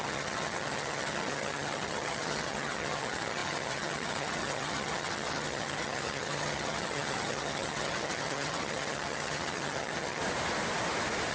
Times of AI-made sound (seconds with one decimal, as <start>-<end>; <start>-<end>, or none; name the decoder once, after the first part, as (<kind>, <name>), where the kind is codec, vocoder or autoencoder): 0.0-10.2 (vocoder, HiFi-GAN)